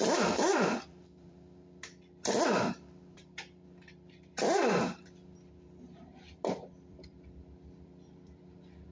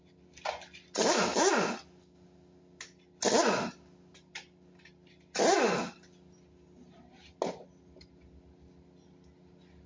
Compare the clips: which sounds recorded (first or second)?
second